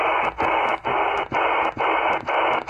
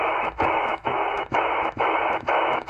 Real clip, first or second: first